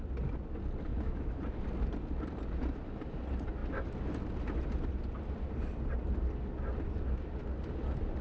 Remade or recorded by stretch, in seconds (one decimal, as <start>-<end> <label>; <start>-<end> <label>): 0.0-0.9 recorded; 0.9-1.4 remade; 1.4-8.2 recorded